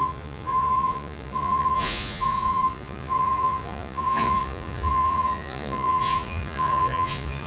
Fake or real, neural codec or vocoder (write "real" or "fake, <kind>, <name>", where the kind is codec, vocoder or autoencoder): fake, vocoder, Vocos